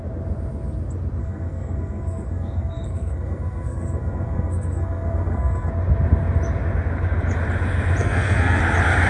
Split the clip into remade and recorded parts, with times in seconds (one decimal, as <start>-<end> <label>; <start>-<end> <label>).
0.0-1.2 recorded; 1.2-5.7 remade; 5.7-8.0 recorded; 8.0-8.6 remade; 8.6-9.1 recorded